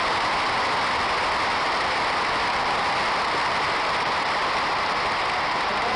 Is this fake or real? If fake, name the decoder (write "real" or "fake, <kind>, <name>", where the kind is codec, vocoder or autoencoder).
real